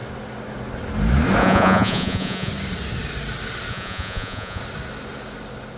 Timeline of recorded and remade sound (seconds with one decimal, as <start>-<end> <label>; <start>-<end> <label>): 0.0-1.4 recorded; 1.4-2.5 remade; 2.5-3.7 recorded; 3.7-4.6 remade; 4.6-5.8 recorded